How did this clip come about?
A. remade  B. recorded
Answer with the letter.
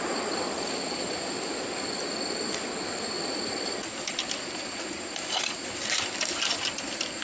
B